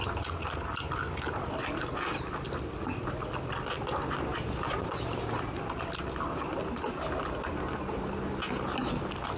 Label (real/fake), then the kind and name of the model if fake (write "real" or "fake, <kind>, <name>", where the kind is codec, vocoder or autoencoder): real